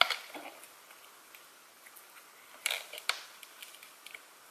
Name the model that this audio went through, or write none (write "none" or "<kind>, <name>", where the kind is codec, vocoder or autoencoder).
none